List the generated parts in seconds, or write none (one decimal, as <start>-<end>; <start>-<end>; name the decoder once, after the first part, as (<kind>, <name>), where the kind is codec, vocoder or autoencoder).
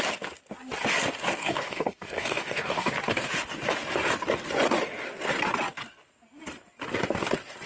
1.4-2.9 (codec, DAC)